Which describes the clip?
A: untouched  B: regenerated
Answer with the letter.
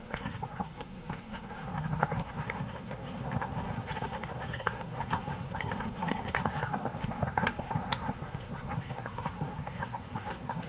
B